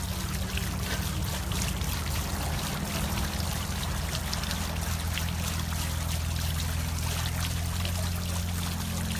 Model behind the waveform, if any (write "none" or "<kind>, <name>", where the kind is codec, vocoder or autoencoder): none